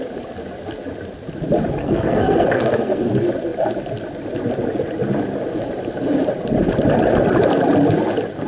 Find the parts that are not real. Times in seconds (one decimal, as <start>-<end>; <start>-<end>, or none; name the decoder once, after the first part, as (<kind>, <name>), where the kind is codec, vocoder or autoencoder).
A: 1.8-3.1 (codec, SNAC)